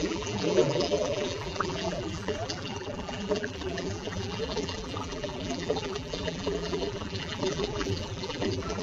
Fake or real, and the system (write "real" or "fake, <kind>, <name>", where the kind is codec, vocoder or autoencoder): fake, vocoder, BigVGAN v2